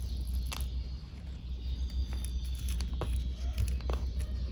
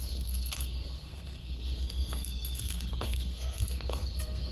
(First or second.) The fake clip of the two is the second